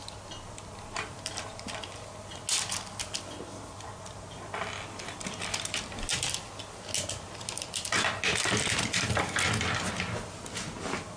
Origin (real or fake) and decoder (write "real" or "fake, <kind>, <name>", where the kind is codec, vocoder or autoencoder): real